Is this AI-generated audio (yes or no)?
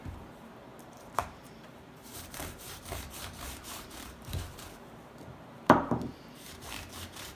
yes